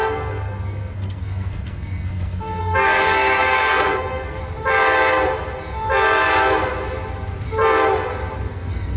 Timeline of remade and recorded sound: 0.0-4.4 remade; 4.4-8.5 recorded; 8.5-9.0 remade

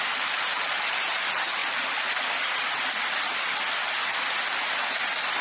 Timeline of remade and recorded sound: 0.0-0.5 recorded; 0.5-1.2 remade; 1.2-5.4 recorded